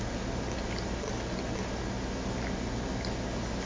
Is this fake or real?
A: real